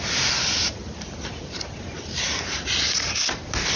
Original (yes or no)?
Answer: yes